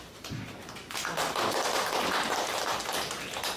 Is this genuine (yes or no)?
yes